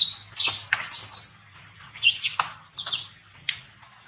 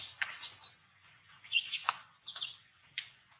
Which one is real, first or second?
first